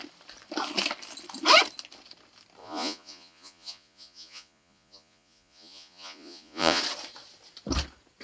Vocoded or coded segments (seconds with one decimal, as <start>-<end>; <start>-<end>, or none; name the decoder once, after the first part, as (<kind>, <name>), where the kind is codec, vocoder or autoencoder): 2.6-6.8 (vocoder, Vocos)